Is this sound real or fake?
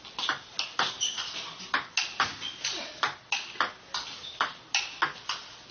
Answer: real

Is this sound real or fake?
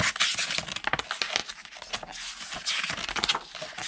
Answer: real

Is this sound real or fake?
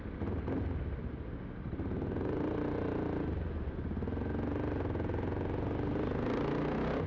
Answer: real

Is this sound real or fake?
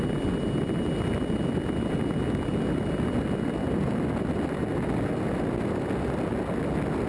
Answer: real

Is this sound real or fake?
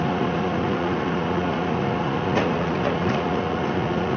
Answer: fake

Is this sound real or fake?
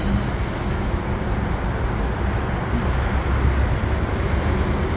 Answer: real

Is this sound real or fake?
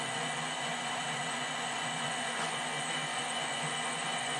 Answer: fake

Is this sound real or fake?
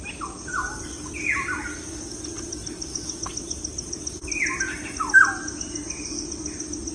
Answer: real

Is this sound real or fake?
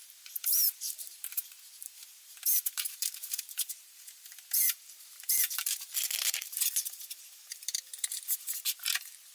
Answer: fake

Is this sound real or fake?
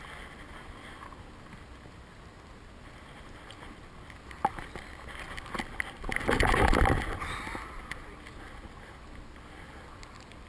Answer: real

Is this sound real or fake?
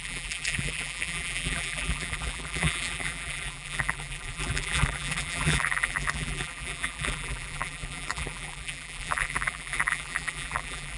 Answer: fake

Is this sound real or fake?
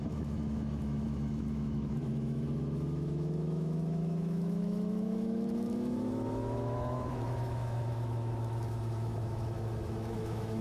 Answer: fake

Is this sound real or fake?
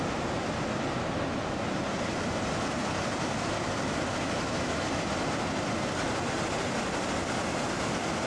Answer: real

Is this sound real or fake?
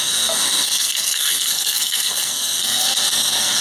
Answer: fake